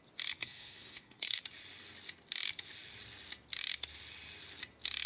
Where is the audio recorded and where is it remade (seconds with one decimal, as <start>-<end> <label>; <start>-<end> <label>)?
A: 0.0-0.4 recorded; 0.4-1.4 remade; 1.4-5.1 recorded